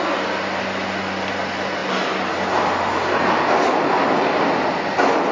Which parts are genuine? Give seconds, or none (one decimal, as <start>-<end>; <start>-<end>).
0.0-5.3